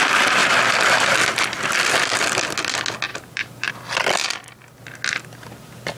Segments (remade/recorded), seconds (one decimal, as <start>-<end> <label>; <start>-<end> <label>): 0.0-3.1 recorded; 3.1-3.7 remade; 3.7-6.0 recorded